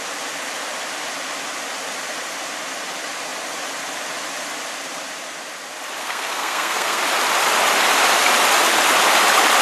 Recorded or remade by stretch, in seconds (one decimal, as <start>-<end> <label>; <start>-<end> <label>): 0.0-6.0 recorded; 6.0-7.0 remade; 7.0-9.6 recorded